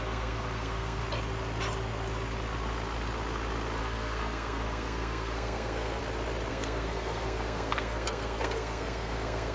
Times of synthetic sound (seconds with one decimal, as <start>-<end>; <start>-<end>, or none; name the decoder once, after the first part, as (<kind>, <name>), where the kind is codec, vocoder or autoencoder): 0.0-1.0 (codec, SNAC); 3.8-6.0; 6.5-9.5